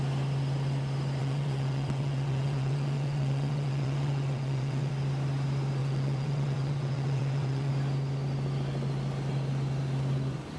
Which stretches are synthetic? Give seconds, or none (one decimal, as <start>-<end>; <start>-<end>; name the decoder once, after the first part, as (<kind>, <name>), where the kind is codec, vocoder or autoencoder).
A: 1.2-4.9 (vocoder, WaveNeXt); 5.8-7.7